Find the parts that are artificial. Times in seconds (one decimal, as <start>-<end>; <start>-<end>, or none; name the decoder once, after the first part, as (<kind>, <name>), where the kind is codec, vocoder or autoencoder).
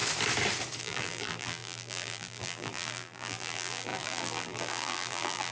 0.8-5.5 (vocoder, BigVGAN v2)